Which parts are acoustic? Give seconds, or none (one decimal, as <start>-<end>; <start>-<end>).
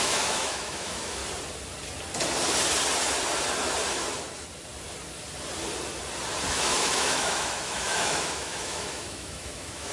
1.2-6.5